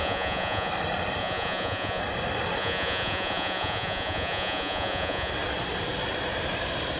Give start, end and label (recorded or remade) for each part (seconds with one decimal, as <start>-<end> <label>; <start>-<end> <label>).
0.0-0.7 remade; 0.7-1.2 recorded; 1.2-2.0 remade; 2.0-2.6 recorded; 2.6-5.3 remade; 5.3-7.0 recorded